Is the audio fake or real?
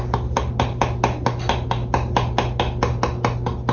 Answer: real